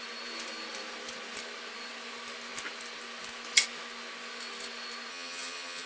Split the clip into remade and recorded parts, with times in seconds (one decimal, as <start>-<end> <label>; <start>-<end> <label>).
0.0-5.1 recorded; 5.1-5.9 remade